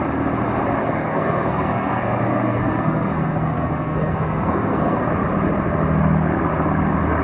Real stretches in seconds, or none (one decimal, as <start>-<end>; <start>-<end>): 0.0-0.8; 5.1-7.2